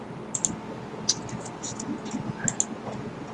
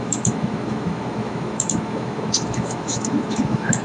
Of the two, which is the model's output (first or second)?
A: second